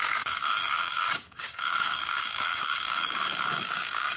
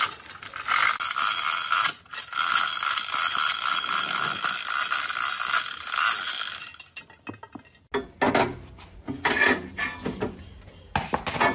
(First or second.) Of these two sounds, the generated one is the first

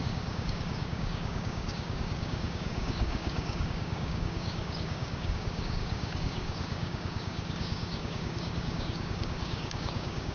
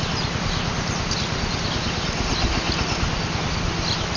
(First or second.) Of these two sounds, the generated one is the first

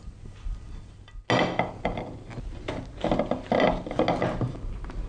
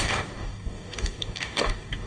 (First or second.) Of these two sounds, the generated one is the second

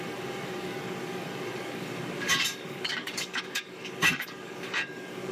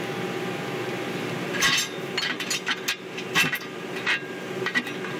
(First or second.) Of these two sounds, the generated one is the first